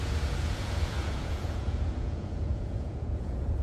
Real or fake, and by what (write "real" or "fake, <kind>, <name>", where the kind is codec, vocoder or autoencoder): fake, vocoder, Vocos